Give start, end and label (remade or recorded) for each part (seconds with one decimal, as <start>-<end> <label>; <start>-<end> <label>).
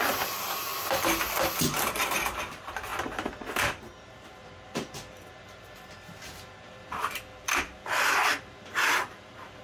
0.0-0.7 remade; 0.7-2.5 recorded; 2.5-2.9 remade; 2.9-3.8 recorded; 3.8-9.6 remade